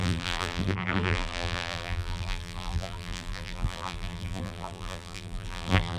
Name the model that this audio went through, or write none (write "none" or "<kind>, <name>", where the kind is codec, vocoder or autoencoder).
vocoder, BigVGAN v2